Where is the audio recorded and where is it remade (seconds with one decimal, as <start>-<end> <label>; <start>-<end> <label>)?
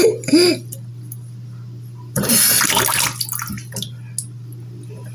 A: 0.0-5.1 recorded